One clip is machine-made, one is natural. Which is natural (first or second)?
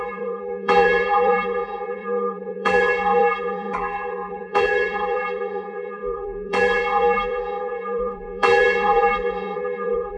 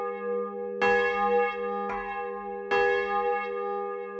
second